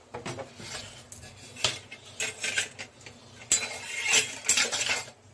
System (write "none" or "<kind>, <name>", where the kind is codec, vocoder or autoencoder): none